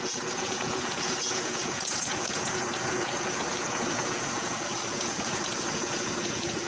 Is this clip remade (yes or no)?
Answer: yes